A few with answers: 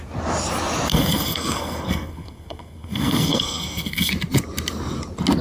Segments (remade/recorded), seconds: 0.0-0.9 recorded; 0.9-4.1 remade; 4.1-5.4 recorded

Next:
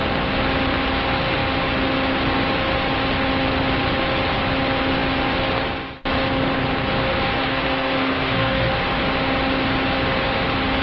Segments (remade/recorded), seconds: 0.0-7.4 recorded; 7.4-8.7 remade; 8.7-10.8 recorded

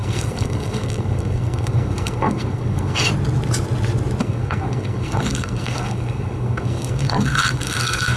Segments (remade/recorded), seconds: 0.0-3.1 remade; 3.1-4.2 recorded; 4.2-8.2 remade